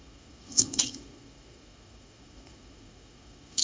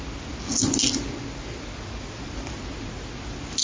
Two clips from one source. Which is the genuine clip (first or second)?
second